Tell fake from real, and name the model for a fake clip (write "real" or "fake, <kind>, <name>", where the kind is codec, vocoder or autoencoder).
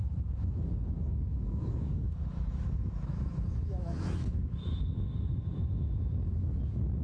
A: fake, autoencoder, DAC-VAE